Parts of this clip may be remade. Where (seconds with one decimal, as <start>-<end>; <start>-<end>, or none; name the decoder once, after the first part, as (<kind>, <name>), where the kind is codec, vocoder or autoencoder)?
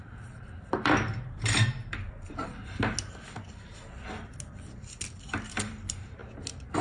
0.0-2.6 (vocoder, BigVGAN v2); 3.3-3.7; 5.3-6.2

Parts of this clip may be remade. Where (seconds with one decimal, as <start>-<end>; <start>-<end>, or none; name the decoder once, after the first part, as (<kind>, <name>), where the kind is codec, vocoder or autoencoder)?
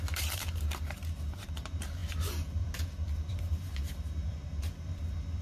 0.0-5.4 (vocoder, BigVGAN v2)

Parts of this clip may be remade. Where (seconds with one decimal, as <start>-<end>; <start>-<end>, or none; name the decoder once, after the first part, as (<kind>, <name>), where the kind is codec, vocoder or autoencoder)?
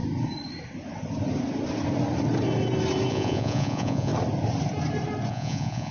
3.1-4.1 (vocoder, Vocos); 5.3-5.9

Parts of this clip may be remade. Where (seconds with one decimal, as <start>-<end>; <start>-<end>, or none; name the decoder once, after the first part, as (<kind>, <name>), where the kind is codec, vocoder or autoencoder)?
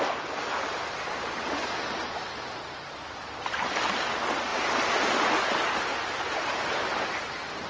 none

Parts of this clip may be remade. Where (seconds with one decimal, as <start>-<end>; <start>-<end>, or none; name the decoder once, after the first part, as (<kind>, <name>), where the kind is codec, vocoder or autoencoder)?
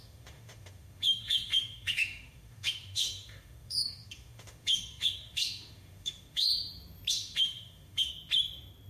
0.0-6.5 (autoencoder, DAC-VAE); 7.1-8.1